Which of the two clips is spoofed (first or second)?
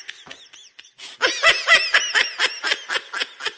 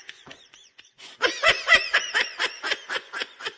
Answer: second